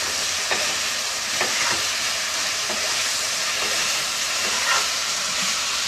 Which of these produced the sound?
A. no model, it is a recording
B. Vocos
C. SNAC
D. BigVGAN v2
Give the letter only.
D